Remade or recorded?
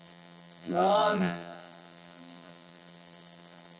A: remade